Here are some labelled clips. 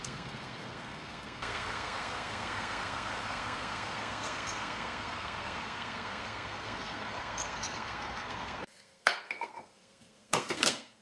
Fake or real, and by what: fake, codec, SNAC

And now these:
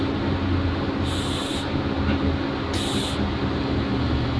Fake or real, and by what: real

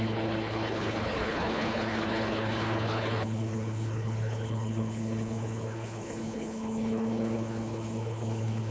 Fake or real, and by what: fake, codec, HILCodec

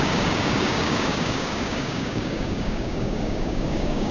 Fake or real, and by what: fake, codec, DAC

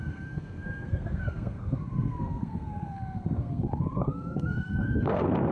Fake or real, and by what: fake, codec, SNAC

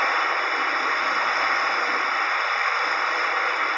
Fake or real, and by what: real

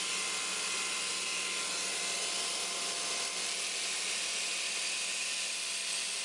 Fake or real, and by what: real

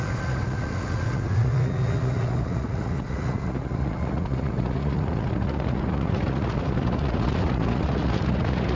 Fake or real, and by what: fake, vocoder, Vocos